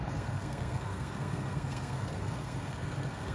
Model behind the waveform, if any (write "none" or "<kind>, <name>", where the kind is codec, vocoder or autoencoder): codec, SNAC